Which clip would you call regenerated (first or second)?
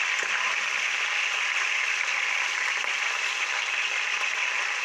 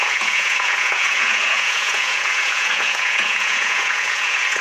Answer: second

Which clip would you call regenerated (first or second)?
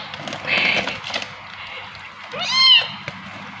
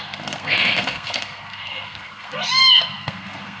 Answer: second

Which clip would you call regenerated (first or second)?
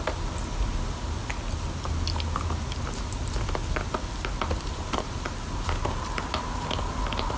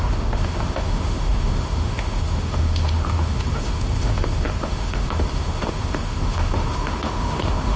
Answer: second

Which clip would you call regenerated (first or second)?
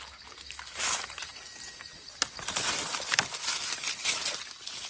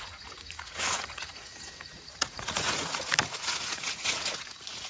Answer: second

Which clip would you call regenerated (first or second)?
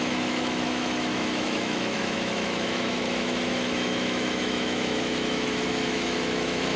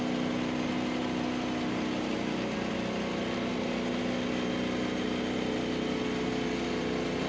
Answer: first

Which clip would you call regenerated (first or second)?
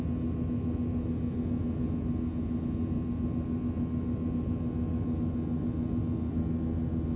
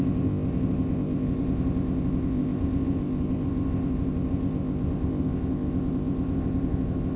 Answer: second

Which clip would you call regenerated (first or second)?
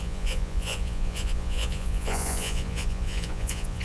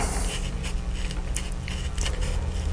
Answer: first